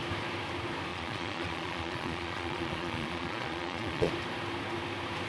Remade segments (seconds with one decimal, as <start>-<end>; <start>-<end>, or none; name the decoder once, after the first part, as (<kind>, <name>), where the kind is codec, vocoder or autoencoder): 0.9-4.1 (vocoder, Vocos)